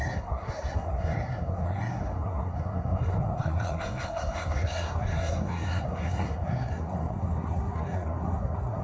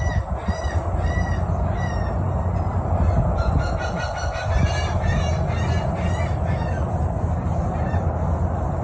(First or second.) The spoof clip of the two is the first